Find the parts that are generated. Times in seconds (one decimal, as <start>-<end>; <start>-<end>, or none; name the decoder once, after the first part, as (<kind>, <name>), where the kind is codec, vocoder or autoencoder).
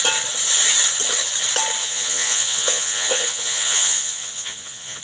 1.8-5.0 (vocoder, Vocos)